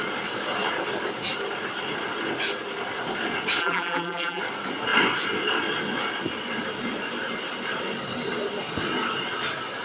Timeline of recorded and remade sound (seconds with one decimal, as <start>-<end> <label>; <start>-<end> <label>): 0.0-3.6 recorded; 3.6-4.4 remade; 4.4-9.8 recorded